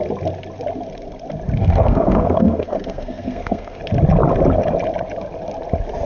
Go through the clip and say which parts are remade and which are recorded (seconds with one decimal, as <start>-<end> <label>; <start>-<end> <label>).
0.0-1.6 recorded; 1.6-3.8 remade; 3.8-6.1 recorded